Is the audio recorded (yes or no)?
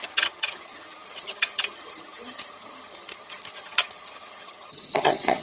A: no